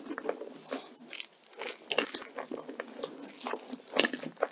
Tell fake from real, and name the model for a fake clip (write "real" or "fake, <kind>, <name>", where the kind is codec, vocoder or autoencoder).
real